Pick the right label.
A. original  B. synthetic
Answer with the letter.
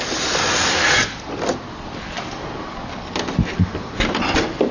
A